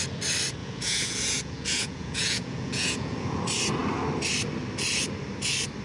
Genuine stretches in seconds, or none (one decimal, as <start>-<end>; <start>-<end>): 0.0-0.6; 3.4-5.8